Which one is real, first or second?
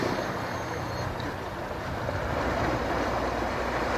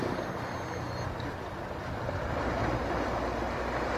second